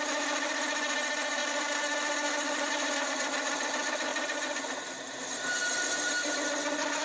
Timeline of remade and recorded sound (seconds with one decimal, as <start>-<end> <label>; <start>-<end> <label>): 0.0-7.0 recorded